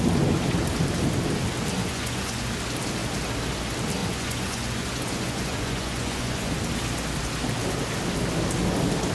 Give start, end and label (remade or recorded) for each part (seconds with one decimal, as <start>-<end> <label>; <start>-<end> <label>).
0.0-1.8 recorded; 1.8-2.5 remade; 2.5-4.0 recorded; 4.0-6.5 remade; 6.5-9.1 recorded